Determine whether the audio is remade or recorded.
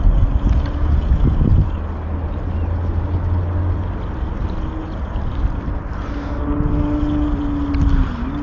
recorded